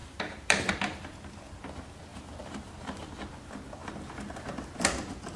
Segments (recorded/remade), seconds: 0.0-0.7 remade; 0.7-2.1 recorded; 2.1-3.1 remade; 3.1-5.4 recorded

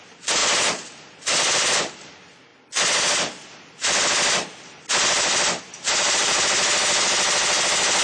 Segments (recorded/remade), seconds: 0.0-8.0 recorded

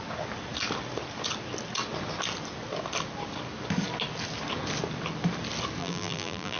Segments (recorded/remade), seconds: 0.0-5.8 recorded; 5.8-6.6 remade